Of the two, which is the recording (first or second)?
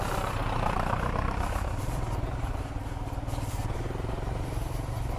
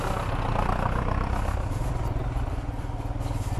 second